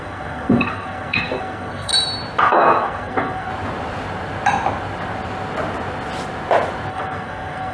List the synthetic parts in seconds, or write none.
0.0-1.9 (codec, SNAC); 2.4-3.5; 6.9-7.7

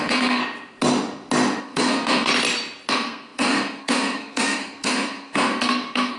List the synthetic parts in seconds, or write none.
0.0-0.4 (codec, SNAC); 1.6-2.3; 2.9-6.2

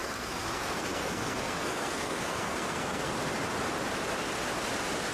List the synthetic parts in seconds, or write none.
0.0-3.1 (codec, SNAC)